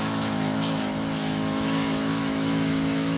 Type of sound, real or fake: fake